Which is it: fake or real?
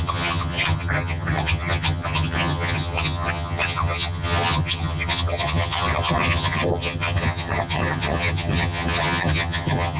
fake